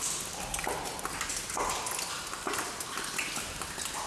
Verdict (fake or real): real